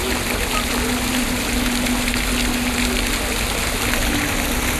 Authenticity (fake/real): real